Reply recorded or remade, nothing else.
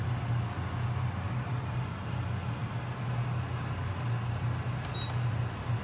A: recorded